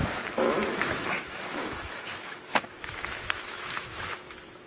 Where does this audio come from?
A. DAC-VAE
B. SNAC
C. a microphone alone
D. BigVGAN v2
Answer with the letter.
A